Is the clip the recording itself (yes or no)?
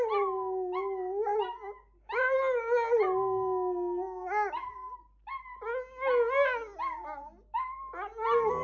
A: yes